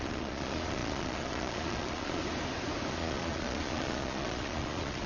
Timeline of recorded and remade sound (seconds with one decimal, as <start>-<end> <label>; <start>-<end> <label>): 0.0-2.2 remade; 2.2-2.9 recorded; 2.9-5.1 remade